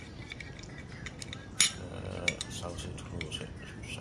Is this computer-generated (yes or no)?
no